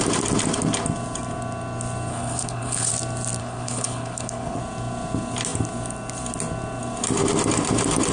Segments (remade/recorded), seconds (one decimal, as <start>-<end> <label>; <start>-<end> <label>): 0.0-2.1 recorded; 2.1-2.9 remade; 2.9-3.4 recorded; 3.4-4.6 remade; 4.6-8.1 recorded